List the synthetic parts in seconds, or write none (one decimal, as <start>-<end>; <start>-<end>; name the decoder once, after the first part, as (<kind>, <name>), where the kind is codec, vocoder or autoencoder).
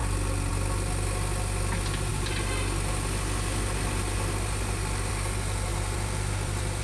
0.0-0.5 (vocoder, BigVGAN v2); 5.7-6.8